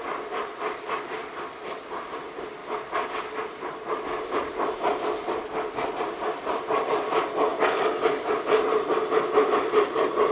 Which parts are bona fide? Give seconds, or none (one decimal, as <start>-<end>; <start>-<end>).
7.5-9.6